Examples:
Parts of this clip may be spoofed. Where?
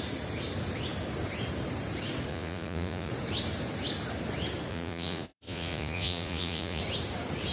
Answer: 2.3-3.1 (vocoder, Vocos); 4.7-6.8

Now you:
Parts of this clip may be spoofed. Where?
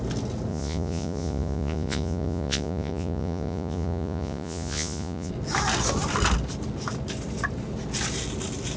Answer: 0.5-5.3 (vocoder, Vocos)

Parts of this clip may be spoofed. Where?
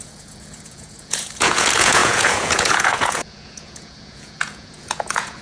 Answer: 0.0-5.4 (vocoder, Vocos)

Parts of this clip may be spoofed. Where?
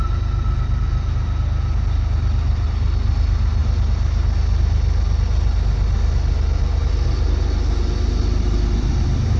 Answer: none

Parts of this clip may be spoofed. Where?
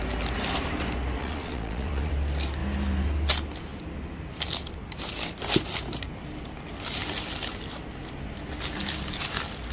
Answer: 1.2-2.1 (vocoder, Vocos)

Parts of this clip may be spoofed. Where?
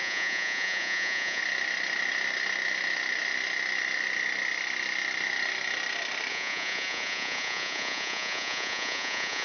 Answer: 0.0-1.4 (vocoder, Vocos); 6.3-9.4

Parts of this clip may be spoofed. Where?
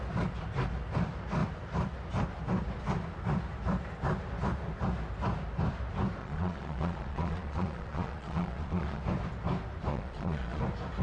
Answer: 6.2-9.0 (vocoder, Vocos); 9.9-10.6